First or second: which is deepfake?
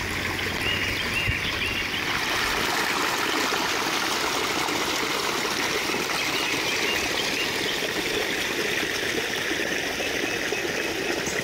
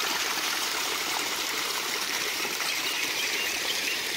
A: second